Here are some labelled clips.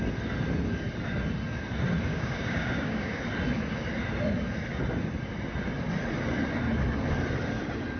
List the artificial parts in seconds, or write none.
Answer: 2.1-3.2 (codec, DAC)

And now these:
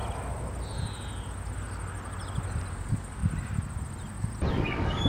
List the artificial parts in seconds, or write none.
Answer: 2.7-3.2 (codec, DAC); 4.5-5.1

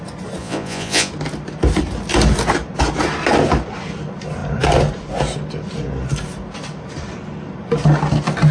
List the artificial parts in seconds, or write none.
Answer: 0.4-1.1 (vocoder, Vocos)

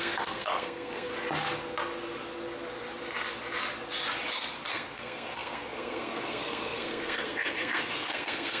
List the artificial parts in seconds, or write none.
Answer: 0.0-1.1 (codec, SNAC); 4.7-8.6

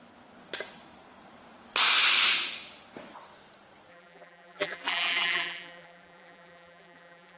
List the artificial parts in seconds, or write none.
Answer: 3.9-7.4 (vocoder, BigVGAN v2)

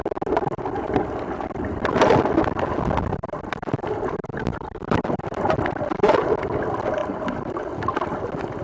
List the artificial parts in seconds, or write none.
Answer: none

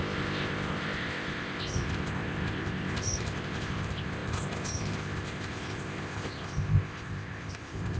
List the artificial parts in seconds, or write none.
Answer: 0.0-8.0 (codec, ZipCodec)

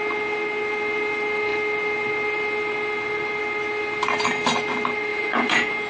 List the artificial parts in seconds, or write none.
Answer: 5.1-5.9 (vocoder, Vocos)